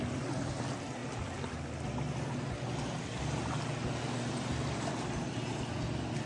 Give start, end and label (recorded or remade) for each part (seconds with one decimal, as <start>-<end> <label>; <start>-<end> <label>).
0.0-6.3 recorded